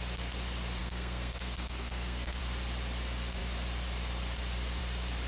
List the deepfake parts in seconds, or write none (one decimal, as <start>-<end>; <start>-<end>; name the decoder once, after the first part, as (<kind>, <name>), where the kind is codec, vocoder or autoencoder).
0.8-2.4 (codec, SNAC)